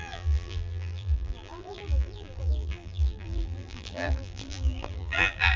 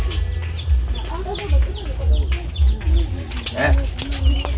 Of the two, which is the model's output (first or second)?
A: first